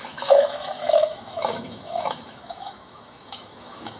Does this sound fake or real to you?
fake